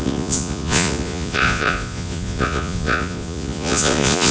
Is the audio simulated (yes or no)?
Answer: yes